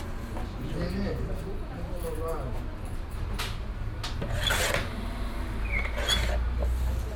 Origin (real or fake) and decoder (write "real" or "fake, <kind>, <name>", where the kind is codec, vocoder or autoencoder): real